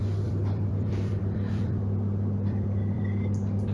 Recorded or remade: remade